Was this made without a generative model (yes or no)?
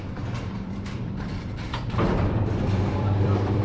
no